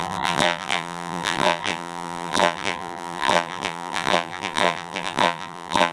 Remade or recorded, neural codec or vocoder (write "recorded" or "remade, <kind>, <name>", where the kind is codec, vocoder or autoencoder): remade, vocoder, BigVGAN v2